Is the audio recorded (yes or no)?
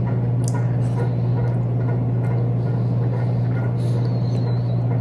yes